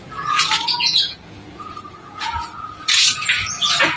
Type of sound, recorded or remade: remade